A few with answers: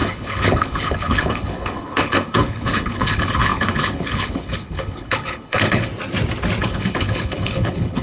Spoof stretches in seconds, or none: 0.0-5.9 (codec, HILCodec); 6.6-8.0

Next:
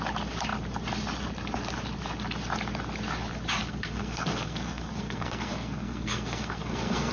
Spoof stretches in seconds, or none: 3.6-7.1 (codec, SNAC)

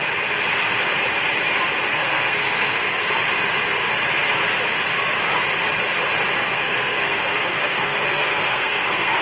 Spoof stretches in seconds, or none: 1.9-3.0 (codec, SNAC); 6.4-9.2

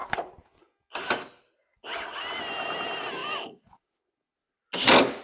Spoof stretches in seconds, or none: none

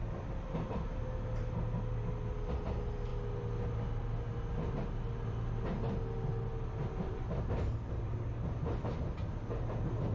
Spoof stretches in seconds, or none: none

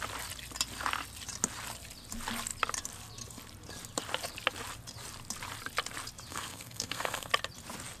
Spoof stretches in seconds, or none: 6.3-7.3 (codec, SNAC)